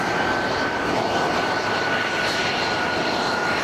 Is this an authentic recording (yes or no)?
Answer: yes